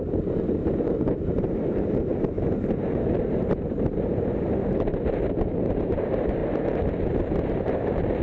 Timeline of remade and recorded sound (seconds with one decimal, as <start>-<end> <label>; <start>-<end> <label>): 0.0-6.4 remade; 6.4-7.1 recorded; 7.1-8.2 remade